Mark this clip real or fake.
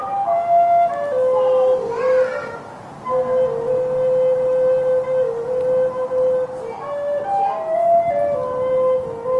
real